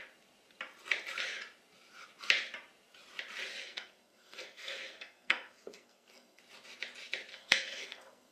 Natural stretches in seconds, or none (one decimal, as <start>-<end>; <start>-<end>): 0.0-3.6; 6.4-7.3